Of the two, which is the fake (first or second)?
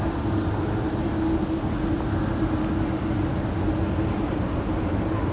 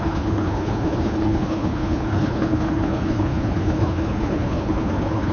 second